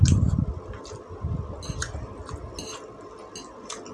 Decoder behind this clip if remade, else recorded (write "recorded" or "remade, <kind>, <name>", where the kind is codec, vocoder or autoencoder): recorded